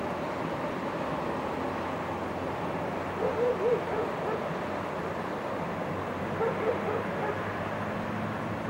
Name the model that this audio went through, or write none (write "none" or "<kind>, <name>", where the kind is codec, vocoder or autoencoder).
vocoder, BigVGAN v2